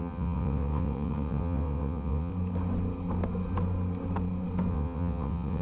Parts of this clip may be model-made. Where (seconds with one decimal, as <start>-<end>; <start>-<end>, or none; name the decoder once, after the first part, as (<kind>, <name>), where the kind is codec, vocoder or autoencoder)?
0.0-2.3 (vocoder, WaveNeXt); 4.7-5.6